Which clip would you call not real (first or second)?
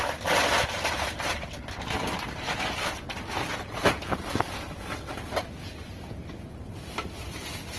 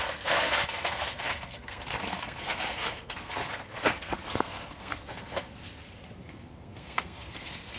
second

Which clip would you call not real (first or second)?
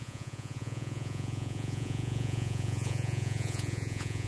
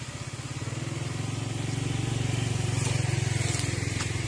first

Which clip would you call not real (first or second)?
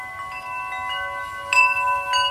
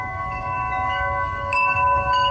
second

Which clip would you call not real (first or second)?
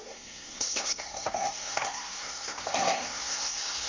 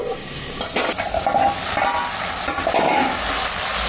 first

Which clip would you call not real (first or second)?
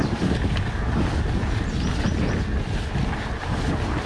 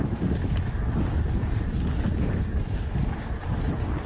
second